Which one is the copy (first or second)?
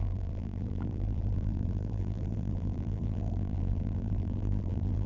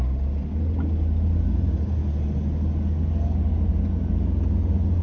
first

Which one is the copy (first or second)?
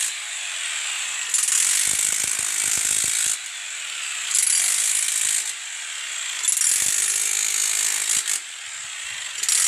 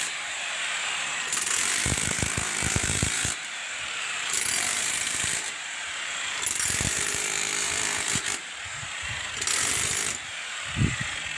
second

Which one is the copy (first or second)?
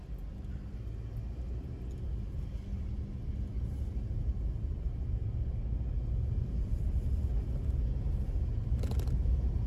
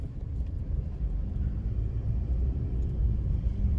second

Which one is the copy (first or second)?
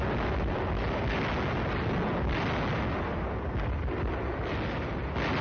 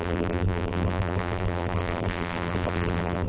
second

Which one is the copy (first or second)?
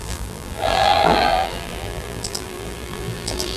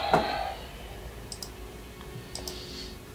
first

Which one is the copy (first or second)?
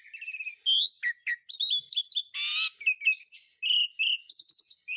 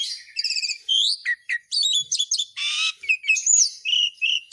second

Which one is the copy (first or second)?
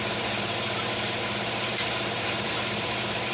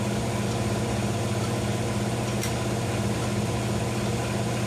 first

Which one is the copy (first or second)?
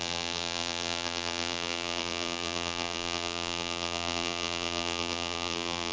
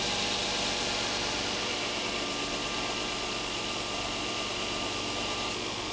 first